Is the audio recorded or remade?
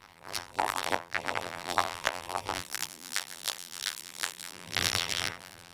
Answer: remade